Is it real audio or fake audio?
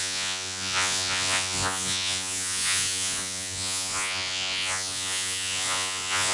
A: fake